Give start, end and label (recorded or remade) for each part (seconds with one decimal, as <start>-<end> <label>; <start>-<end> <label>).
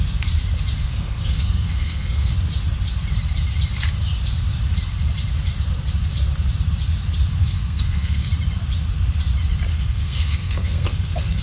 0.0-0.8 recorded; 0.8-2.3 remade; 2.3-7.4 recorded; 7.4-8.3 remade; 8.3-9.7 recorded; 9.7-11.4 remade